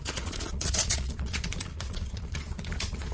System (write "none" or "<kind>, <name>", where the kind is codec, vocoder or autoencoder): vocoder, Vocos